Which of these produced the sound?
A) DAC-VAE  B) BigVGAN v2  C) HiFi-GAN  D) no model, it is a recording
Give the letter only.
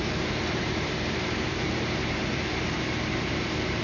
B